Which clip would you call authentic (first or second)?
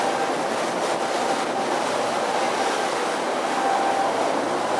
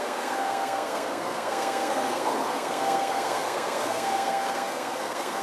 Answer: first